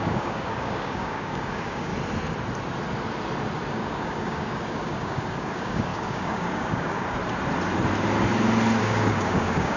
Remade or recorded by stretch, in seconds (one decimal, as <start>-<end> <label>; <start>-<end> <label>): 0.0-1.9 remade; 1.9-3.7 recorded; 3.7-7.2 remade; 7.2-8.8 recorded; 8.8-9.8 remade